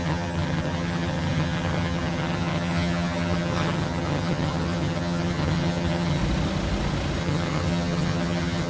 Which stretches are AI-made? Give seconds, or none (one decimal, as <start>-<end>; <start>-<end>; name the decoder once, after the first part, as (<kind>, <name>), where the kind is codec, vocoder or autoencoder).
0.0-6.2 (vocoder, HiFi-GAN); 7.2-8.7